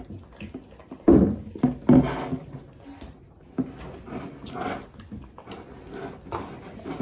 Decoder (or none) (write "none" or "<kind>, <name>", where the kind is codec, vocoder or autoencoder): none